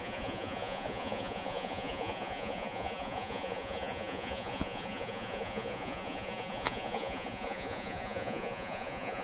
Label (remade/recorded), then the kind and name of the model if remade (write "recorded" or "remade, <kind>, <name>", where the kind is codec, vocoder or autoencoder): remade, vocoder, Vocos